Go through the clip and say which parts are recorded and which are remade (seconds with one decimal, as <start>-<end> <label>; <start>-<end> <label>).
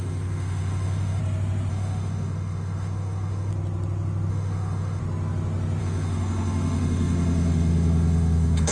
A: 0.0-1.2 remade; 1.2-1.7 recorded; 1.7-3.5 remade; 3.5-4.3 recorded; 4.3-5.0 remade; 5.0-5.8 recorded; 5.8-8.7 remade